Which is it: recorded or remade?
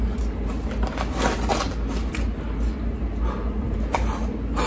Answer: recorded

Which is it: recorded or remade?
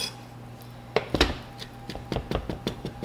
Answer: remade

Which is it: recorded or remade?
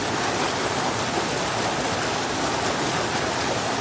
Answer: recorded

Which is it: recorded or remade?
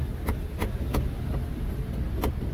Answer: recorded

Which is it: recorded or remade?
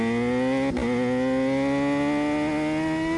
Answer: recorded